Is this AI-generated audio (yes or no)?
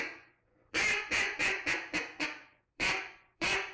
yes